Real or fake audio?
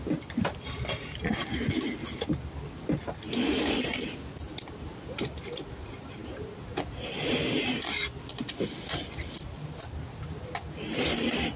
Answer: real